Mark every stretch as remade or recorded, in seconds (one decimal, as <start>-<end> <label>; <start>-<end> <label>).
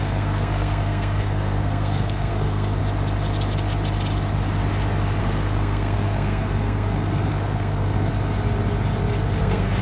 0.0-2.8 remade; 2.8-5.2 recorded; 5.2-8.1 remade; 8.1-9.4 recorded; 9.4-9.8 remade